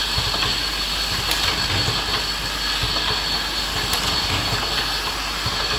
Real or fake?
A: real